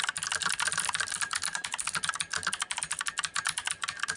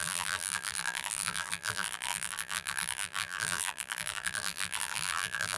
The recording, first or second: first